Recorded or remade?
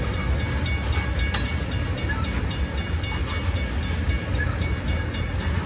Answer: recorded